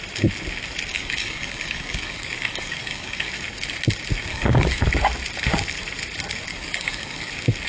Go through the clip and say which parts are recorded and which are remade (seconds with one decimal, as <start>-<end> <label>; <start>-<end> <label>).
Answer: 0.0-0.9 recorded; 0.9-3.3 remade; 3.3-4.3 recorded; 4.3-4.8 remade; 4.8-6.5 recorded; 6.5-7.3 remade; 7.3-7.7 recorded